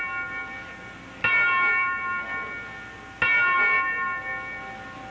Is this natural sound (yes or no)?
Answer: yes